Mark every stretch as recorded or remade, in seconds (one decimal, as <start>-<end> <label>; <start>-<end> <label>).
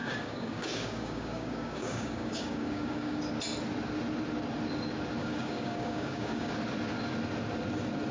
0.0-3.2 remade; 3.2-5.2 recorded; 5.2-6.5 remade; 6.5-8.1 recorded